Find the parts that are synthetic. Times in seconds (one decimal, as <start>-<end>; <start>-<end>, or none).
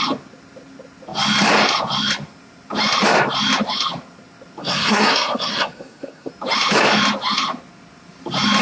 4.6-6.3